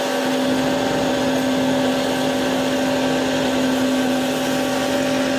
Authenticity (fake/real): real